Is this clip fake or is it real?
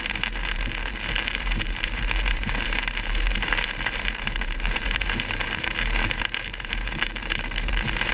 fake